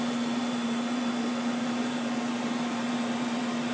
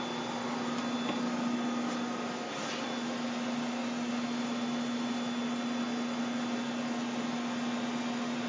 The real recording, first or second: second